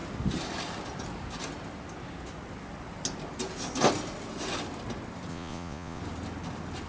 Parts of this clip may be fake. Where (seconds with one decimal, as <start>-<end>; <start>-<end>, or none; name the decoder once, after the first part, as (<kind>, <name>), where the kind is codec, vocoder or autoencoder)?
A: 5.3-6.0 (vocoder, Vocos)